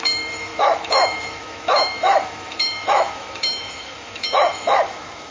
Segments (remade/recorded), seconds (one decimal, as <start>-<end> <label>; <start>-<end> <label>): 0.0-5.3 remade